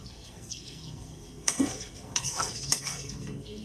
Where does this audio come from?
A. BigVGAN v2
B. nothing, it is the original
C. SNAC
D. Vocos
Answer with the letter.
C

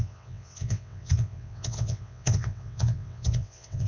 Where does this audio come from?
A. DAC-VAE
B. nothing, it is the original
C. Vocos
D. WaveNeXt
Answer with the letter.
D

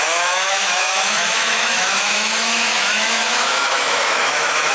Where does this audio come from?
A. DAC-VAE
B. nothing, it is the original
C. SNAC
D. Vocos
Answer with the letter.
A